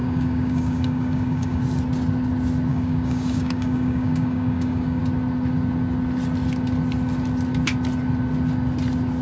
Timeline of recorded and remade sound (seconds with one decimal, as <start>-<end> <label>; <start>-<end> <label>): 0.0-1.6 remade; 1.6-2.7 recorded; 2.7-5.0 remade; 5.0-9.2 recorded